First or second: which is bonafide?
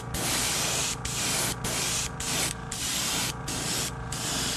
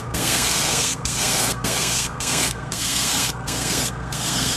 first